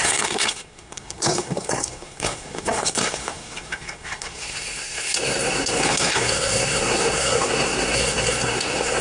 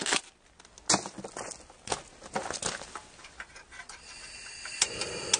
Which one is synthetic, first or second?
first